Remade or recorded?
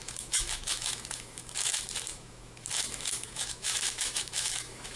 remade